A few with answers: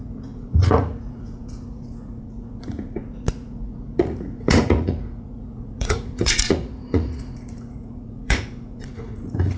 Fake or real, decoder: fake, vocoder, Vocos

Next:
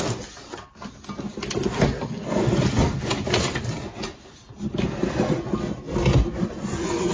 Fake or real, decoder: real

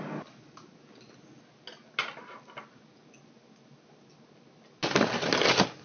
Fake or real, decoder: real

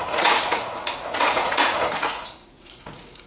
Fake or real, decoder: fake, vocoder, Vocos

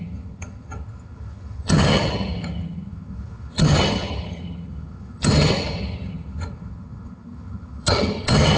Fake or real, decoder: fake, vocoder, HiFi-GAN